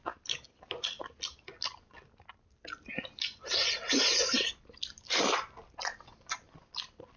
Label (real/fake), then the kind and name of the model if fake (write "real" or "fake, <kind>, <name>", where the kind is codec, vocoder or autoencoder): real